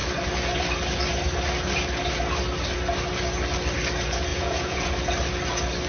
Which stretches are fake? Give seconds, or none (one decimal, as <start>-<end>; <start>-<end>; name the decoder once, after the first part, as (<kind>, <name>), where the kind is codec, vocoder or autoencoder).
4.3-4.9 (vocoder, Vocos)